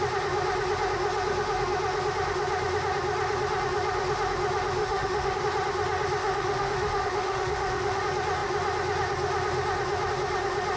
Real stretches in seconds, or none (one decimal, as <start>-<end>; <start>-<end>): 0.0-4.8; 5.4-6.2; 8.0-10.8